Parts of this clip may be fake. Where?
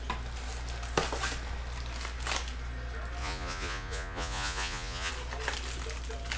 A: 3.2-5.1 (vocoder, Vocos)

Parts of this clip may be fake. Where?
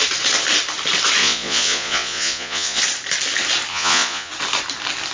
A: 1.2-2.8 (vocoder, Vocos); 3.7-4.3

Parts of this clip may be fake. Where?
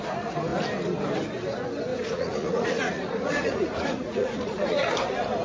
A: 1.9-4.9 (vocoder, Vocos)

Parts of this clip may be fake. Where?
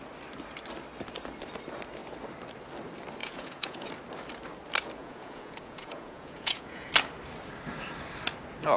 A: 3.2-3.9 (vocoder, Vocos); 5.0-6.9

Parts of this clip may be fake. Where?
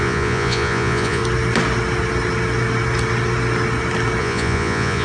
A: 0.0-1.2 (vocoder, Vocos); 4.2-5.0